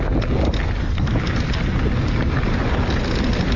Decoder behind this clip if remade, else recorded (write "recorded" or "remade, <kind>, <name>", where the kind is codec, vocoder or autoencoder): recorded